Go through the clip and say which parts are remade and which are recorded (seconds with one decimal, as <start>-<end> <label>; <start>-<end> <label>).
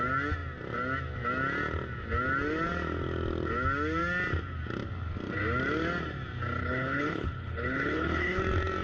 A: 0.0-6.6 recorded; 6.6-8.4 remade; 8.4-8.8 recorded